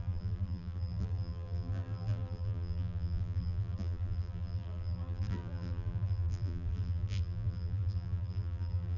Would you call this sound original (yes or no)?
no